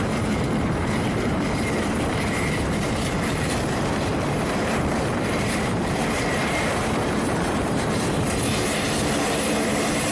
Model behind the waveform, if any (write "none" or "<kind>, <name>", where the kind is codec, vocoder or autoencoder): vocoder, BigVGAN v2